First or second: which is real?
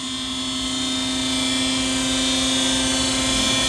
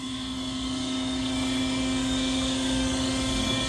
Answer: first